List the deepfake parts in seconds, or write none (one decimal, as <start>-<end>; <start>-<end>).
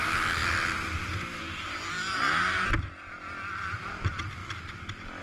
none